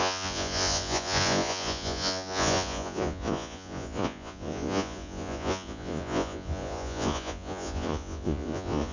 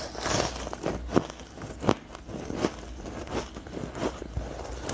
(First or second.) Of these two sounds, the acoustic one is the second